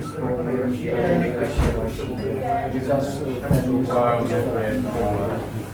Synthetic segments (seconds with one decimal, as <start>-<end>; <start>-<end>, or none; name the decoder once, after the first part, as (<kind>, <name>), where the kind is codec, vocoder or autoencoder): 0.0-0.9 (codec, DAC); 4.3-5.7